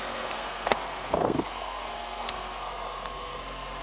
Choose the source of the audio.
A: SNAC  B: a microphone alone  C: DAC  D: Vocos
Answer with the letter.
A